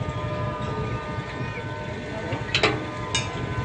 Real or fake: real